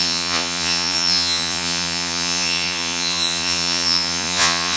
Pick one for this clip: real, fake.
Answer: fake